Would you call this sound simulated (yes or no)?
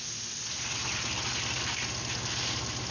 no